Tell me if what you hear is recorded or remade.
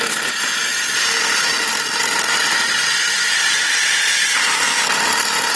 recorded